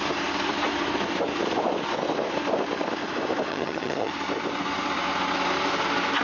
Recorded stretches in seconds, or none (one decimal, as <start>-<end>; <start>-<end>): 0.0-3.5; 4.1-6.2